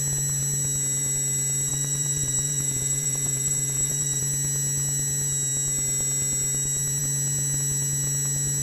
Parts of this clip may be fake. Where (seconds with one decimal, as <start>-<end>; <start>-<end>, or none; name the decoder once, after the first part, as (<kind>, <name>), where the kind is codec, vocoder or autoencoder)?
1.7-4.2 (vocoder, Vocos)